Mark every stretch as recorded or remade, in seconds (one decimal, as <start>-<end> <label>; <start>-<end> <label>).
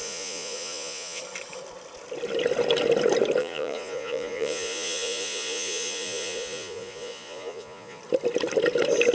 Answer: 0.0-1.2 remade; 1.2-3.4 recorded; 3.4-8.0 remade; 8.0-9.1 recorded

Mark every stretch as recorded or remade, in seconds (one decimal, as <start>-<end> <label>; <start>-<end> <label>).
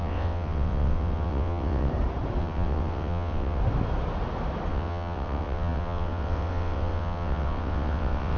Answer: 0.0-1.9 remade; 1.9-2.4 recorded; 2.4-3.6 remade; 3.6-4.7 recorded; 4.7-8.4 remade